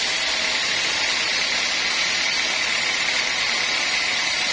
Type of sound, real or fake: real